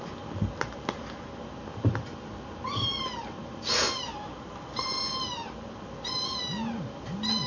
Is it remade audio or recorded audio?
recorded